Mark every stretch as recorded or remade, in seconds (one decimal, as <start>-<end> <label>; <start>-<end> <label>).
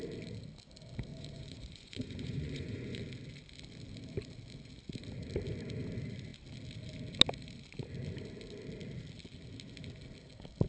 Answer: 0.0-1.1 recorded; 1.1-3.0 remade; 3.0-10.7 recorded